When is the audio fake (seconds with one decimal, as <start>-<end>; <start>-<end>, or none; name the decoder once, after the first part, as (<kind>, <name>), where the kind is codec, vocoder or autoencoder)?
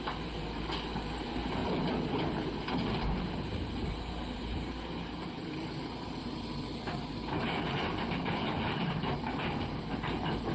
0.0-1.6 (vocoder, BigVGAN v2); 2.7-10.5